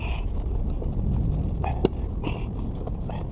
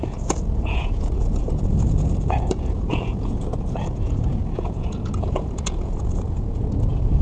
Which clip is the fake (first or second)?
second